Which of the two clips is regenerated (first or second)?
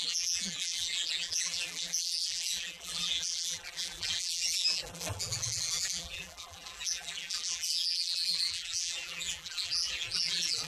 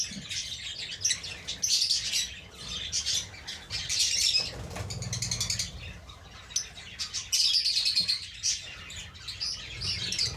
first